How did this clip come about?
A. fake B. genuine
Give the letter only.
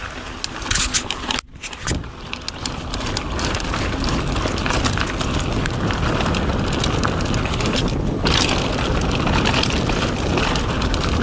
B